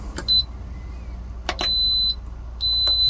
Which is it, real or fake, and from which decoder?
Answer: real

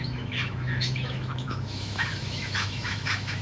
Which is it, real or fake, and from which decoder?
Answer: fake, autoencoder, DAC-VAE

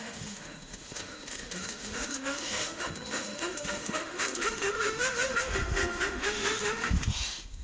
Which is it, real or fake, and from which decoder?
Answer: fake, autoencoder, DAC-VAE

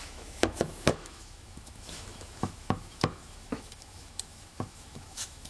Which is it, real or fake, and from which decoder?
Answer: fake, autoencoder, DAC-VAE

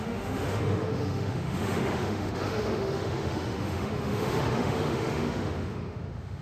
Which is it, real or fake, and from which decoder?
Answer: fake, autoencoder, DAC-VAE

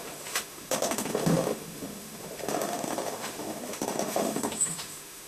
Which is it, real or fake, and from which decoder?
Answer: fake, autoencoder, DAC-VAE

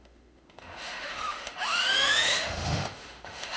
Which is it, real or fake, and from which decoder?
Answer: fake, autoencoder, DAC-VAE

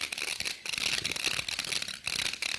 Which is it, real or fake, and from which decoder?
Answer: real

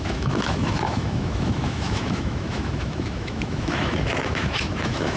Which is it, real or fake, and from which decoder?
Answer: fake, autoencoder, DAC-VAE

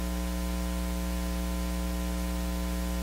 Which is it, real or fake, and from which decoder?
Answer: real